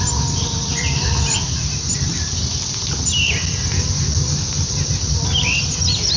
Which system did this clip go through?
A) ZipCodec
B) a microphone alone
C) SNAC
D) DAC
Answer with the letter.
B